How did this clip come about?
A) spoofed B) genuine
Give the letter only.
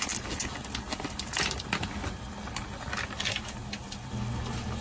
B